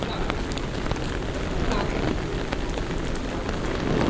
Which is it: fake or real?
real